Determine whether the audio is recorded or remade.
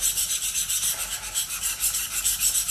recorded